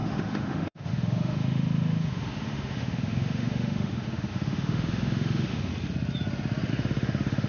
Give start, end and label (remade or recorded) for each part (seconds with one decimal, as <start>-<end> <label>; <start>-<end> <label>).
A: 0.0-5.7 remade; 5.7-6.7 recorded; 6.7-7.5 remade

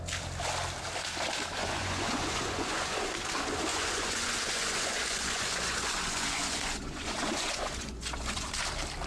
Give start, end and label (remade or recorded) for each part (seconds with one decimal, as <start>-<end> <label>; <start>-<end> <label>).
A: 0.0-1.6 recorded; 1.6-3.1 remade; 3.1-3.7 recorded; 3.7-8.5 remade; 8.5-9.1 recorded

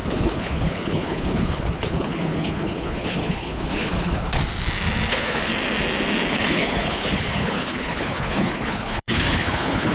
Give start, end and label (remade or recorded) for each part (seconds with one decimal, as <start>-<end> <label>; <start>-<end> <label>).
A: 0.0-4.4 remade; 4.4-5.1 recorded; 5.1-5.5 remade; 5.5-6.3 recorded; 6.3-9.9 remade

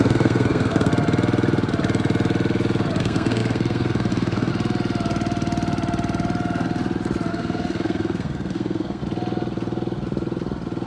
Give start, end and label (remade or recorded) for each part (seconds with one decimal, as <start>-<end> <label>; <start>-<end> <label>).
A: 0.0-0.9 remade; 0.9-3.0 recorded; 3.0-4.5 remade; 4.5-7.3 recorded; 7.3-9.0 remade; 9.0-10.9 recorded

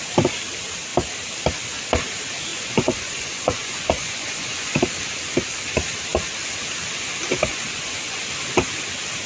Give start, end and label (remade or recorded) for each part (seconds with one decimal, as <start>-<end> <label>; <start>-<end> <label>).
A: 0.0-2.5 recorded; 2.5-4.8 remade; 4.8-7.5 recorded; 7.5-8.2 remade; 8.2-9.3 recorded